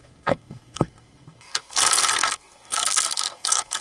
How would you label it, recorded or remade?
remade